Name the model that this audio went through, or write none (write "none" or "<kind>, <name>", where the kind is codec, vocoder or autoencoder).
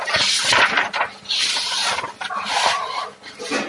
none